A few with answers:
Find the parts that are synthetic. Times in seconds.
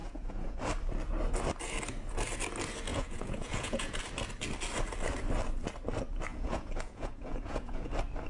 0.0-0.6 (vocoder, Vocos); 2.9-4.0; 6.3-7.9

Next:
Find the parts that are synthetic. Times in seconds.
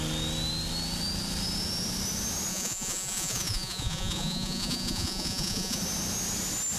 2.5-5.8 (vocoder, Vocos)